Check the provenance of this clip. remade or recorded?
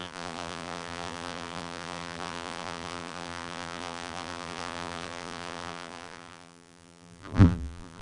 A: remade